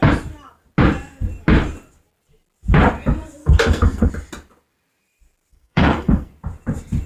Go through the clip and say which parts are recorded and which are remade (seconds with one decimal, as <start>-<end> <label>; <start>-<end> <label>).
0.0-3.4 recorded; 3.4-4.1 remade; 4.1-5.5 recorded; 5.5-6.3 remade; 6.3-7.1 recorded